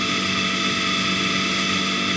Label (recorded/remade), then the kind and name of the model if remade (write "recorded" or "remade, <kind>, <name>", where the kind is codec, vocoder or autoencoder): recorded